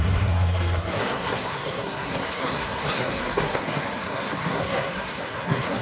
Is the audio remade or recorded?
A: remade